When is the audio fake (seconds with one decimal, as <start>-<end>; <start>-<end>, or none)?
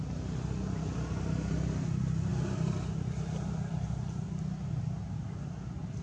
none